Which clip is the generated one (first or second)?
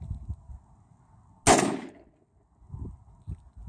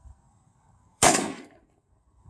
second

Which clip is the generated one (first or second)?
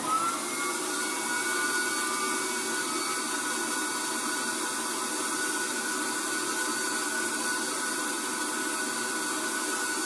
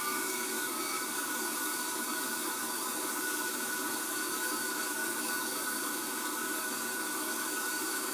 second